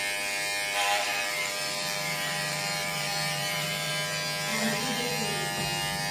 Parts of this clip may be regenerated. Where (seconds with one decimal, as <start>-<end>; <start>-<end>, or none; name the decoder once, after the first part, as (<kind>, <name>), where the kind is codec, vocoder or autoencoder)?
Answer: 1.0-3.9 (vocoder, BigVGAN v2); 4.5-5.1